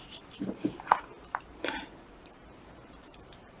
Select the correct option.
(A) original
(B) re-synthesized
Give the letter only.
B